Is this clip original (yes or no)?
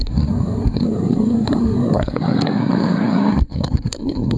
no